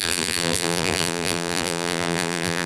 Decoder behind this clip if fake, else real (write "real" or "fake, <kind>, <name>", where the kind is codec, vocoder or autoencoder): fake, vocoder, BigVGAN v2